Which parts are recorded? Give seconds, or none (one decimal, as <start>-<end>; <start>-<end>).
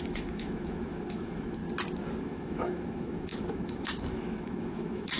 1.6-2.2